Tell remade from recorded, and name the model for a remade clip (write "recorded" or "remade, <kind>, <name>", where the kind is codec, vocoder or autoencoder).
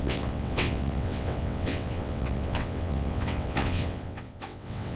remade, vocoder, WaveNeXt